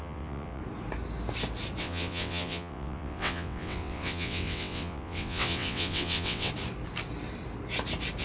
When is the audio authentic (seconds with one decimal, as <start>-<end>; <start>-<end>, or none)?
0.6-1.8; 6.5-8.2

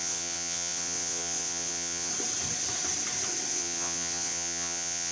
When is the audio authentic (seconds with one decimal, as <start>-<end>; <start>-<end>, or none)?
2.1-3.5

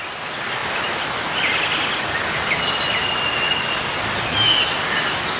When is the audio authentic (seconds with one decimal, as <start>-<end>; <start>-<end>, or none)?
0.0-5.4

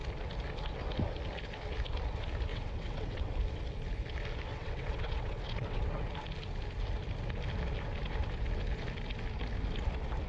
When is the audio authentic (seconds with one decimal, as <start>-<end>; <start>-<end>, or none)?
0.0-2.5; 3.3-4.5; 5.8-10.3

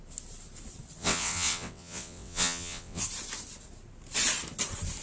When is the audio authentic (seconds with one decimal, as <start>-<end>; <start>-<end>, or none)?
0.0-1.0; 3.0-5.0